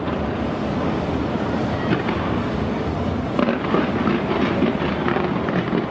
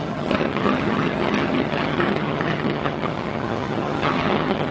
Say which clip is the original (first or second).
first